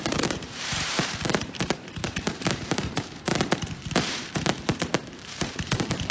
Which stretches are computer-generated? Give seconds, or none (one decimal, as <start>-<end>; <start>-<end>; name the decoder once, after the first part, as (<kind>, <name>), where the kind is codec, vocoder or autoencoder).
0.0-3.3 (vocoder, BigVGAN v2); 4.0-6.1